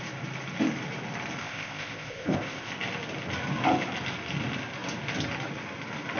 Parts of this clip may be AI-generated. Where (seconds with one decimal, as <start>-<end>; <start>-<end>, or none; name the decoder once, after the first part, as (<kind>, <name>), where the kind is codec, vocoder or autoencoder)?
1.4-2.7 (codec, ZipCodec)